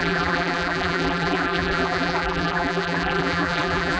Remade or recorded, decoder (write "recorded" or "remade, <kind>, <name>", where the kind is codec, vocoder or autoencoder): remade, vocoder, BigVGAN v2